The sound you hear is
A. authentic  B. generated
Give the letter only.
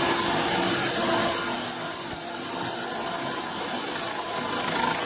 A